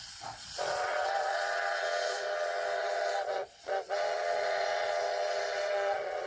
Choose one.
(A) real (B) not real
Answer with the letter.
B